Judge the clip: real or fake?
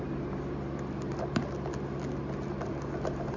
real